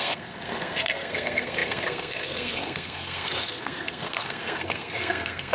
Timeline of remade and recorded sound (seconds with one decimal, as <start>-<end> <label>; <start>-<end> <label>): 0.0-5.5 remade